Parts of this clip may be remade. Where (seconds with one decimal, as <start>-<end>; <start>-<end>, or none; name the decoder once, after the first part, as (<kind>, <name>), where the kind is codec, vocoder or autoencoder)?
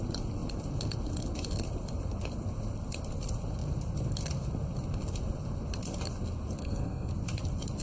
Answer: 6.6-7.1 (codec, SNAC)